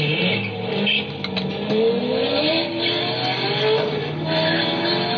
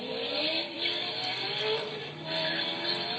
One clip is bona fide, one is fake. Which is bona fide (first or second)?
first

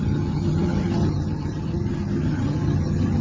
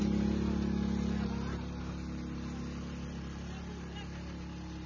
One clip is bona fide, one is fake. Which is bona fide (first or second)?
second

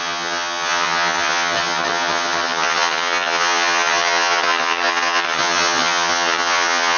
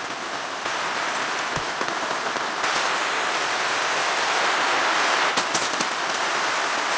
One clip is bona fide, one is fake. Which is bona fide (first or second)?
second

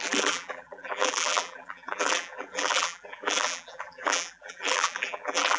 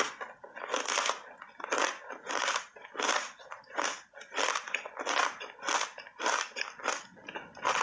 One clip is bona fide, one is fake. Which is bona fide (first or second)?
second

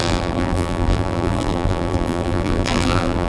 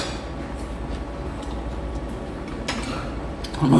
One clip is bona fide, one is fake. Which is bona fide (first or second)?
second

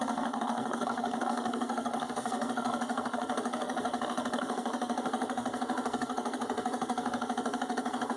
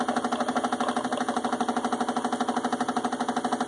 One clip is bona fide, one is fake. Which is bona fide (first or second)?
second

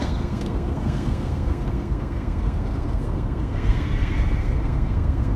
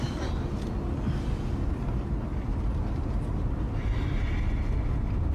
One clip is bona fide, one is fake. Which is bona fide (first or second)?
second